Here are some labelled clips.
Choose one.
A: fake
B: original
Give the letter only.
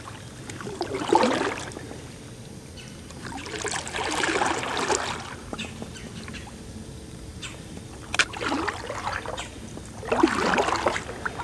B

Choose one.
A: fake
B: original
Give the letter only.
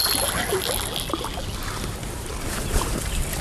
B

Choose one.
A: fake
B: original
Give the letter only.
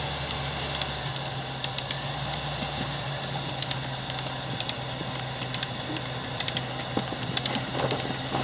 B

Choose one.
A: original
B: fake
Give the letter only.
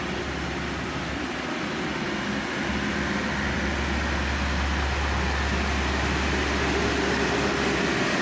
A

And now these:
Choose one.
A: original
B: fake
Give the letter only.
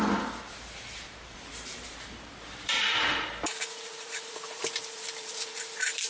B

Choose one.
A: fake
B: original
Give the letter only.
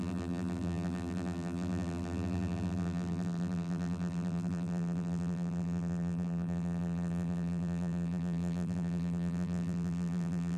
A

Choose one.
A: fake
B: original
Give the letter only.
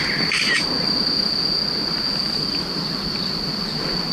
B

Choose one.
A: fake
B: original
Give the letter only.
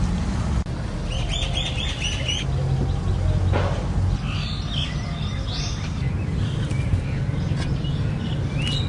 B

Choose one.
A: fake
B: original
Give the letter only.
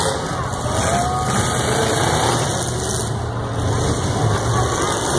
B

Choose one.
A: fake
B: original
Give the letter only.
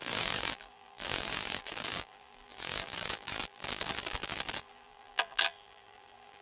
A